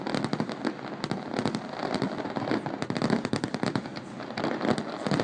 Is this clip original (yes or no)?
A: yes